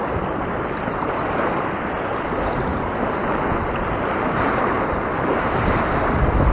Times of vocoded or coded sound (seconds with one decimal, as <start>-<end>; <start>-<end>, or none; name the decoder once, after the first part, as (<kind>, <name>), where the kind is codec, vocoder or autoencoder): none